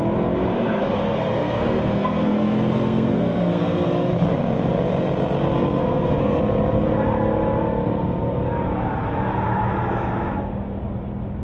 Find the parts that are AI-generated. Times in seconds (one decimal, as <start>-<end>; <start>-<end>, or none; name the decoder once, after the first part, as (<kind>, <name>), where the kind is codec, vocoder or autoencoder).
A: 0.5-4.1 (codec, SNAC); 5.8-6.4

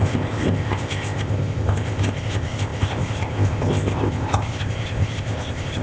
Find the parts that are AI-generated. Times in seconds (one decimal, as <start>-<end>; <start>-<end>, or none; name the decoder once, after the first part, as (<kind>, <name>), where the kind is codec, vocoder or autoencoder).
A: 0.0-5.8 (codec, ZipCodec)